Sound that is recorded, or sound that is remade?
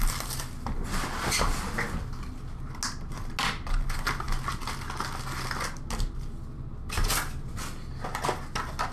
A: recorded